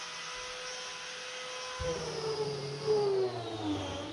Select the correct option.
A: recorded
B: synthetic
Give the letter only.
A